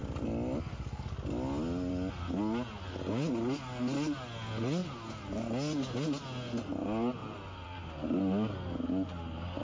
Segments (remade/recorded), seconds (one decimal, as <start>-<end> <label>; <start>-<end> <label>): 0.0-7.2 recorded; 7.2-7.8 remade; 7.8-9.6 recorded